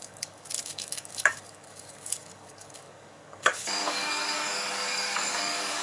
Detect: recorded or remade remade